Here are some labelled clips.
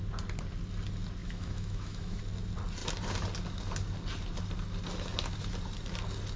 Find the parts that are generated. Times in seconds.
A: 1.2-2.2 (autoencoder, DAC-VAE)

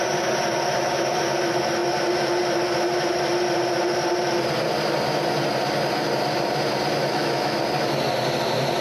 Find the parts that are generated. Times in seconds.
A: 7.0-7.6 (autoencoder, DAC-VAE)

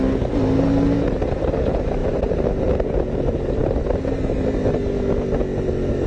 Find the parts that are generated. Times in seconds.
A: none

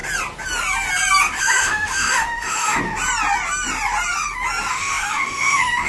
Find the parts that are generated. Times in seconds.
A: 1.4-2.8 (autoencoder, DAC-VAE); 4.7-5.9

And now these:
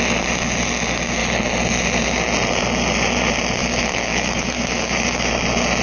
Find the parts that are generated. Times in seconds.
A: 3.6-5.3 (autoencoder, DAC-VAE)